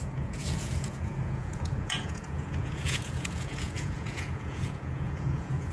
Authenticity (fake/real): fake